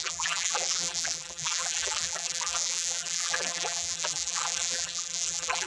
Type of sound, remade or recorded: remade